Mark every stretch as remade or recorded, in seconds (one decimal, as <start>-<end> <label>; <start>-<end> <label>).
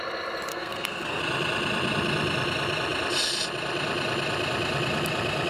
0.0-0.5 recorded; 0.5-1.2 remade; 1.2-5.5 recorded